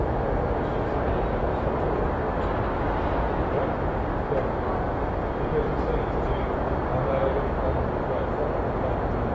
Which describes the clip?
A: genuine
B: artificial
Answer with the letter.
A